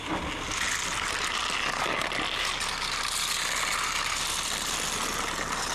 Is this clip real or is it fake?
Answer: real